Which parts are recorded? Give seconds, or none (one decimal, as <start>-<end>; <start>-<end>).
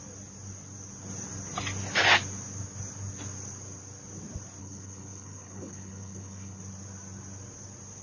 0.0-4.6; 6.6-8.0